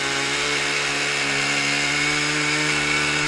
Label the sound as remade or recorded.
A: recorded